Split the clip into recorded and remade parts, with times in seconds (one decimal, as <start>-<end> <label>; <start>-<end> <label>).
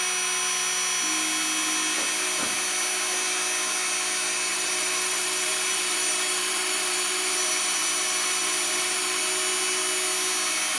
0.0-4.5 recorded; 4.5-9.2 remade; 9.2-10.8 recorded